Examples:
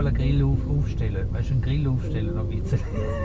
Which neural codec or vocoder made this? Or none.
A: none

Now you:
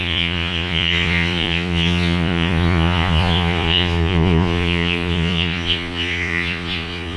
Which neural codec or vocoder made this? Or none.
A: vocoder, Vocos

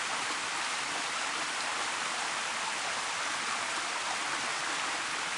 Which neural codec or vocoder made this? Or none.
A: none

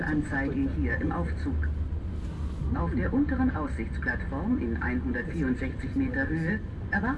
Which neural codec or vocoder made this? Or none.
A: none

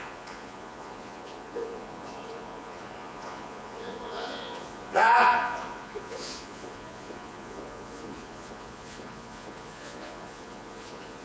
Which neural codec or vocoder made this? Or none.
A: vocoder, Vocos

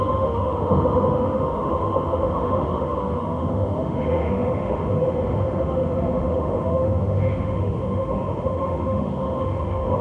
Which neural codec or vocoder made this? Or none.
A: autoencoder, DAC-VAE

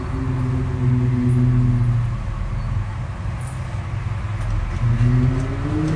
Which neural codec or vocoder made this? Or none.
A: none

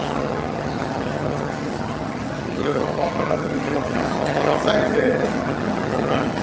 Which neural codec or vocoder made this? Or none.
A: vocoder, HiFi-GAN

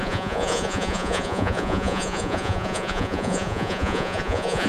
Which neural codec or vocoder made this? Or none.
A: vocoder, Vocos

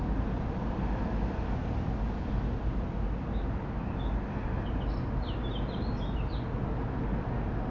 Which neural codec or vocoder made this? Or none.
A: none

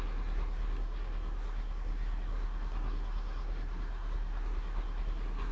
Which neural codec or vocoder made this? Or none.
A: codec, SNAC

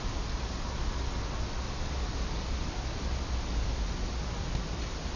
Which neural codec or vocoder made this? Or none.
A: none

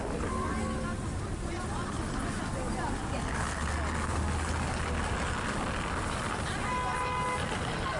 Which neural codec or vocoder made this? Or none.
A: none